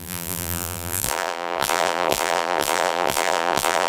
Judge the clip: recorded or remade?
remade